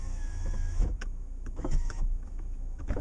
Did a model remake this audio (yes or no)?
yes